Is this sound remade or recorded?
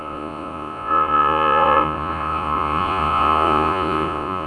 remade